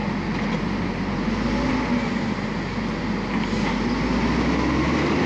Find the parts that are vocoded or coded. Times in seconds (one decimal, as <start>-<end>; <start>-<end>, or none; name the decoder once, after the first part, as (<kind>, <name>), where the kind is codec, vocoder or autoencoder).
none